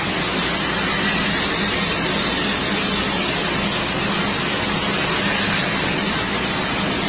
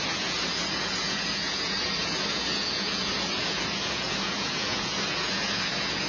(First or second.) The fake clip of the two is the second